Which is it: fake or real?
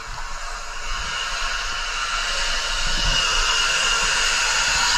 real